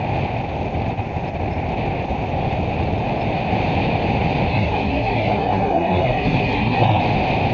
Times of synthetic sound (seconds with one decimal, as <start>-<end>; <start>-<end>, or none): 4.5-7.0